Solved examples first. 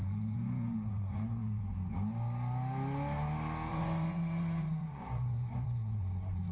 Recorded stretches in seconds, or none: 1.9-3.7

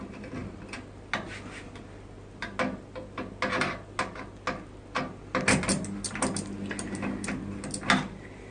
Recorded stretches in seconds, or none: 0.0-8.5

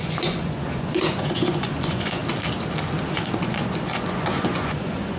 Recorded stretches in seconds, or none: 2.2-3.1

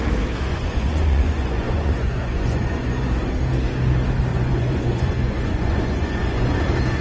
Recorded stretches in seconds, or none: 0.0-0.5; 3.4-4.3; 6.6-7.0

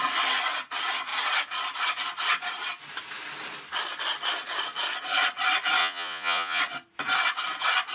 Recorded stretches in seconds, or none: 0.0-5.8; 6.6-7.9

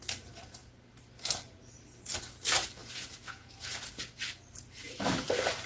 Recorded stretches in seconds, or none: 0.0-2.8; 3.9-5.7

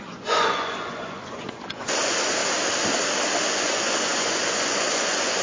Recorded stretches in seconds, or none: 2.4-3.4

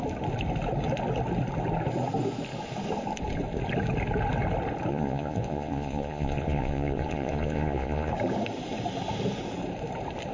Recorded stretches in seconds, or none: 0.0-4.9; 8.1-10.3